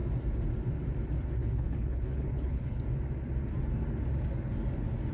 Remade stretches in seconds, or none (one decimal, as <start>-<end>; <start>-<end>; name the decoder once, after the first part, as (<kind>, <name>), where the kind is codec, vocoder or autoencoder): 1.4-2.8 (codec, HILCodec)